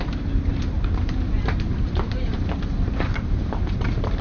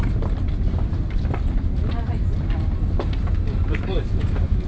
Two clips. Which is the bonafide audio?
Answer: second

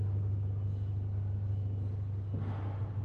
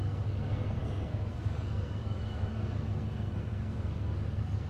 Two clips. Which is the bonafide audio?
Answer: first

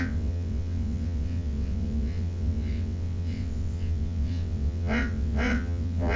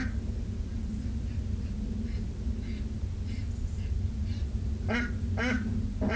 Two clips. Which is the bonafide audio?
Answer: second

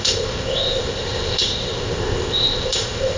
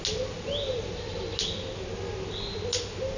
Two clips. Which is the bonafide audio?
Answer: second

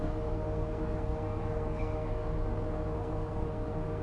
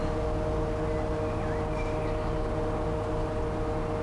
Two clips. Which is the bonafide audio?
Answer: second